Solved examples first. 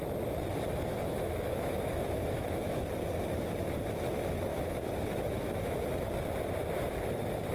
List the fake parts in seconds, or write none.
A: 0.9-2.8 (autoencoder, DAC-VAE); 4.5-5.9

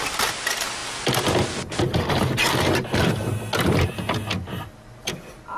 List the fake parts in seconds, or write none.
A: none

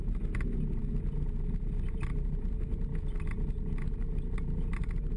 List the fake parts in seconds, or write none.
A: none